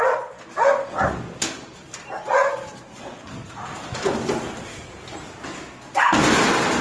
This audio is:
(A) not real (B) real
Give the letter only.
B